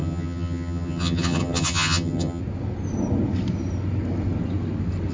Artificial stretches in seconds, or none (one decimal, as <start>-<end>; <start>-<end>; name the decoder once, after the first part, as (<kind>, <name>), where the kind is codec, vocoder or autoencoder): 0.0-2.4 (vocoder, HiFi-GAN)